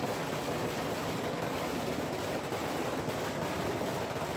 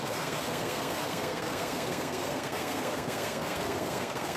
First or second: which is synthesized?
second